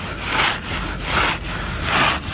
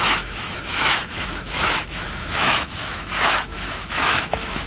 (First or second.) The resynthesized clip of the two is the second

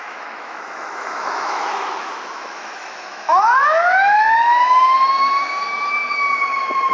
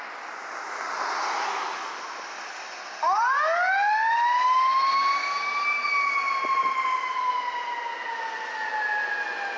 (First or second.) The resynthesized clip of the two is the first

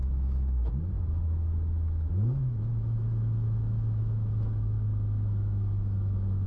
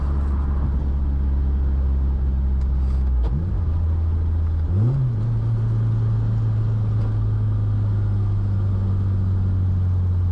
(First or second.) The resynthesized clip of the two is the first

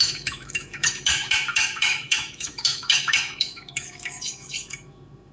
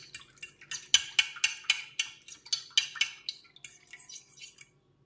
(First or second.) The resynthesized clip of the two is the first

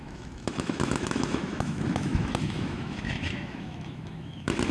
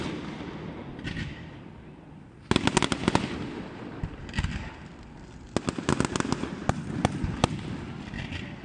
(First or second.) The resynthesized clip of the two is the first